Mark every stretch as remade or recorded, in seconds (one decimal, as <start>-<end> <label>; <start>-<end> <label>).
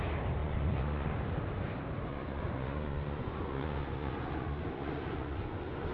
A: 0.0-0.4 recorded; 0.4-1.2 remade; 1.2-2.1 recorded; 2.1-5.9 remade